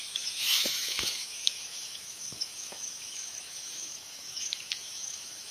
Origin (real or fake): fake